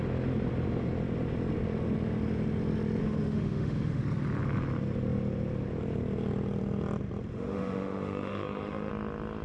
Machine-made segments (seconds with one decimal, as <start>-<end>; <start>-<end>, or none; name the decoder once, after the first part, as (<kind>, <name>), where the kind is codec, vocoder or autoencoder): 3.0-4.0 (autoencoder, DAC-VAE); 7.3-8.9